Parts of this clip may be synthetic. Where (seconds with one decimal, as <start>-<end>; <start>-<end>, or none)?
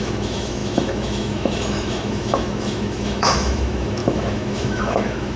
0.0-5.4